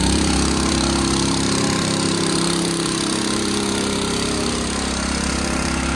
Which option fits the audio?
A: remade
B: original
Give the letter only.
A